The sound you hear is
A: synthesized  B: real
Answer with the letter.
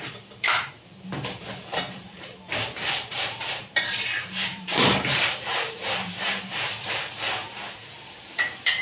A